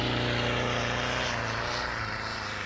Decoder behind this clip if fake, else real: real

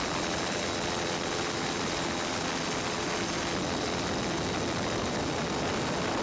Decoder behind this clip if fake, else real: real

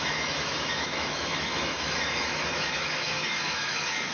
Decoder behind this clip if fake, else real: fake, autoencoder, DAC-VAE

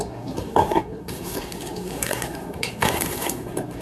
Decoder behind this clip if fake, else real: fake, codec, SNAC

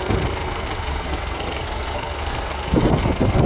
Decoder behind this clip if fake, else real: fake, codec, SNAC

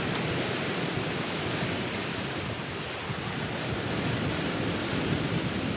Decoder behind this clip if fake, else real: real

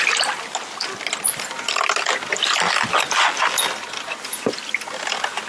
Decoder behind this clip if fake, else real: real